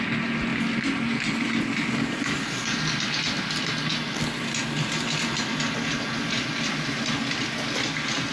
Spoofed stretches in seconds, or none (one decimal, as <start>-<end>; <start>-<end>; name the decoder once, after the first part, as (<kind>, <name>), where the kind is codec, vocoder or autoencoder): none